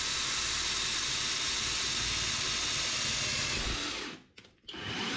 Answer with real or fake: real